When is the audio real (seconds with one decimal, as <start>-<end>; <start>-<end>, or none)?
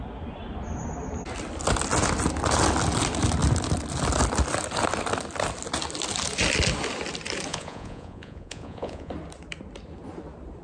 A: 0.0-7.5; 9.1-10.6